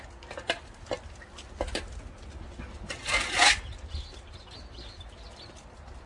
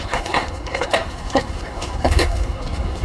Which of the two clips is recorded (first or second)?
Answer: first